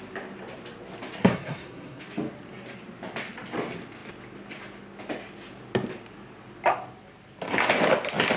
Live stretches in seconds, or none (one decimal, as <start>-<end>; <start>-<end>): 0.0-1.2; 2.0-8.4